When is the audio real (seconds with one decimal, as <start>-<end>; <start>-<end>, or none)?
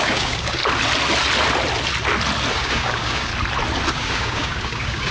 0.6-2.5; 3.3-3.9